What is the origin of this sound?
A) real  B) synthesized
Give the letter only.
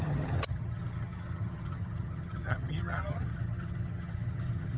B